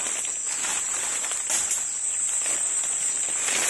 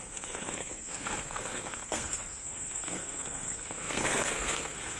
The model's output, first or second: second